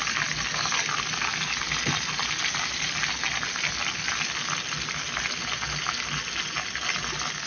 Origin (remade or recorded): recorded